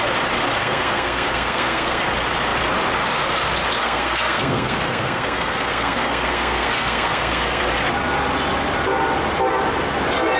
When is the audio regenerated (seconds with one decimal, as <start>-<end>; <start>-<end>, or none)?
0.6-2.0; 3.8-7.6